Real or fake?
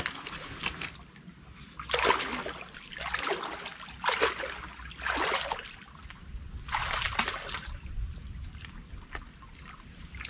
real